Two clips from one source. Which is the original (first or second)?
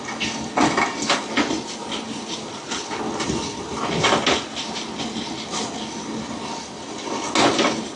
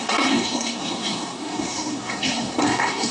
first